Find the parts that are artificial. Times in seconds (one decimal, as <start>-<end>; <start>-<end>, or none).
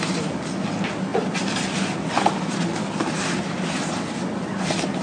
none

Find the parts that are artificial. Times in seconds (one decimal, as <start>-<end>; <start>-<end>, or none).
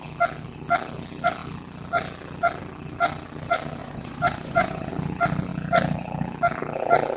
3.8-4.9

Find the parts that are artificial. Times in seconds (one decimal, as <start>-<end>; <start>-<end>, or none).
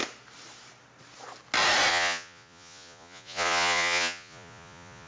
1.9-5.1